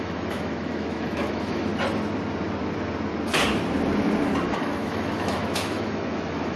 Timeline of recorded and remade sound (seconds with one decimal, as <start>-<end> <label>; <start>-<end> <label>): 0.0-1.7 remade; 1.7-4.5 recorded; 4.5-6.6 remade